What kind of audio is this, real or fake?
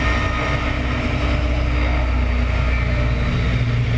real